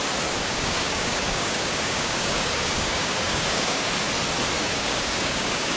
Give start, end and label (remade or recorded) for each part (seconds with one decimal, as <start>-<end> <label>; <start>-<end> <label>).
0.0-0.4 recorded; 0.4-3.9 remade; 3.9-4.6 recorded; 4.6-5.8 remade